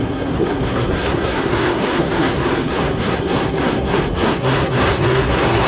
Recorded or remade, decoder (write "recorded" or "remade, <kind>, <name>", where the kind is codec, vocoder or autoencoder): remade, codec, SNAC